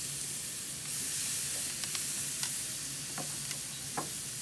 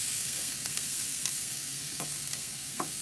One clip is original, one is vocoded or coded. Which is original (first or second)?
first